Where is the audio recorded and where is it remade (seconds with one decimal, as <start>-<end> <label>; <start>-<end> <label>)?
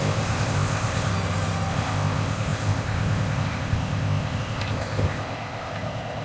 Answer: 0.0-1.1 remade; 1.1-1.7 recorded; 1.7-6.2 remade